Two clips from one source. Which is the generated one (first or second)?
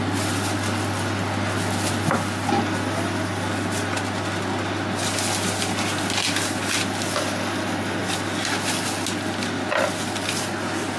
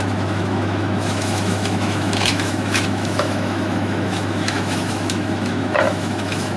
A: second